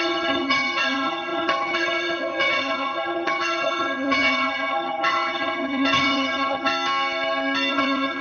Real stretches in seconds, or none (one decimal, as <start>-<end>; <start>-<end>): 6.7-7.7